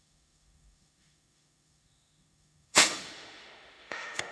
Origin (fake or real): fake